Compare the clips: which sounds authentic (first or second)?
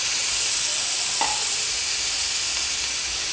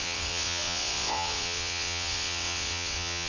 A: first